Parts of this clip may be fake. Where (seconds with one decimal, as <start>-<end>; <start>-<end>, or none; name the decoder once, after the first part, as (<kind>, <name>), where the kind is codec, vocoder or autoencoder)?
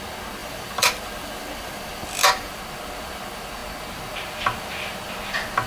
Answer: 0.4-2.6 (vocoder, BigVGAN v2)